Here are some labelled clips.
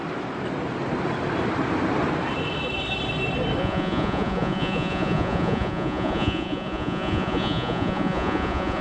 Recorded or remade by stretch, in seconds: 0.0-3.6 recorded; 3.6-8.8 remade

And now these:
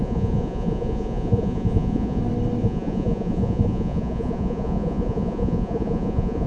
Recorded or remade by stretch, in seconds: 0.0-2.2 remade; 2.2-2.6 recorded; 2.6-6.5 remade